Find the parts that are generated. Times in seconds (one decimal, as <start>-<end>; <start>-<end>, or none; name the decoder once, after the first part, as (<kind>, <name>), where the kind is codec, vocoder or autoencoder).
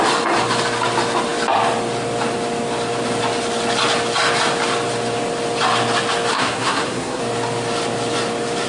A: 6.3-7.2 (codec, SNAC)